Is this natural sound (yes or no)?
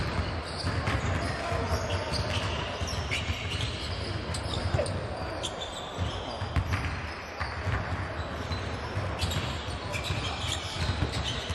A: yes